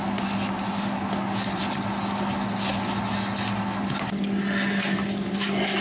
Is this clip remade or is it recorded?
recorded